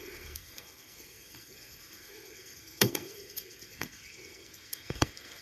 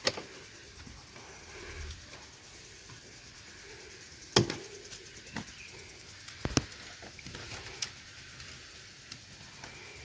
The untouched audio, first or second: second